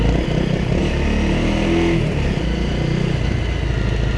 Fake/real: real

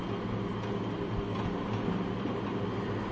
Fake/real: real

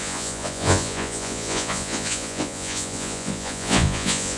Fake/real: fake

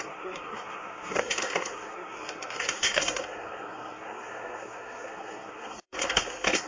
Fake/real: fake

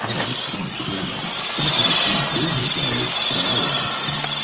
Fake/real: real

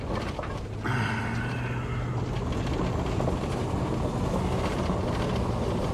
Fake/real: real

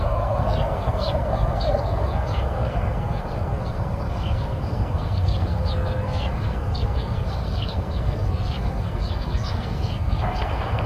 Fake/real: fake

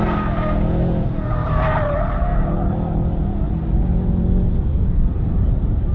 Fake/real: real